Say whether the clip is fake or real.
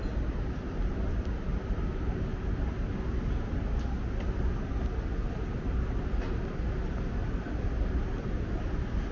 real